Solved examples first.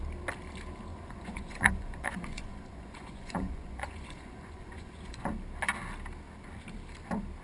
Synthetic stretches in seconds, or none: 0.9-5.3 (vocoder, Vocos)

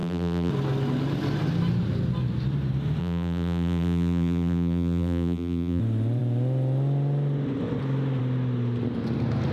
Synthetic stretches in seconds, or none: 0.0-0.5 (vocoder, BigVGAN v2); 3.0-5.8